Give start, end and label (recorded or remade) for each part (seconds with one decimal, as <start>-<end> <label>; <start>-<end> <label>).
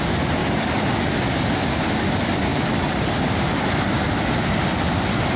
0.0-0.4 recorded; 0.4-1.1 remade; 1.1-2.5 recorded; 2.5-3.6 remade; 3.6-5.4 recorded